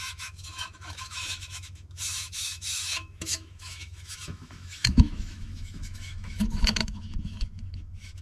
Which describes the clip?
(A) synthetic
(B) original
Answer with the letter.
A